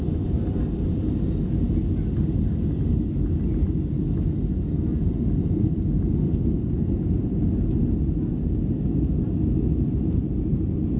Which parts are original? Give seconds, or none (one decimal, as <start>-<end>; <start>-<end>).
0.0-11.0